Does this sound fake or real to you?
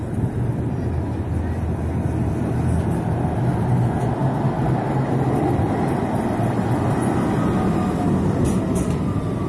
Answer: real